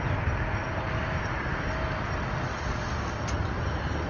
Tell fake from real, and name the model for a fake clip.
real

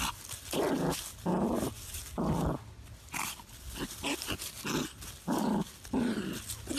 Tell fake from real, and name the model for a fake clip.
real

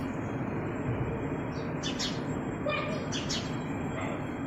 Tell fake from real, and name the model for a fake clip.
real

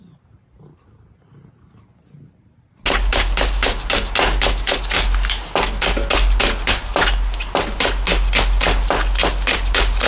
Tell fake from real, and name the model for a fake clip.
real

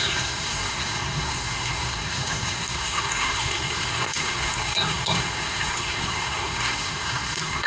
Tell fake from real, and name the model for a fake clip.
fake, codec, SNAC